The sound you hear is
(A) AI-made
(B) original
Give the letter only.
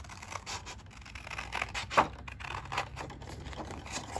B